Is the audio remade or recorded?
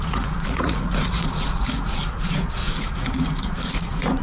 remade